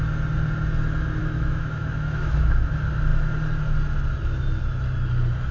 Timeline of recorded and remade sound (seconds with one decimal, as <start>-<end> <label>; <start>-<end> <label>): 0.0-1.2 recorded; 1.2-2.7 remade; 2.7-5.5 recorded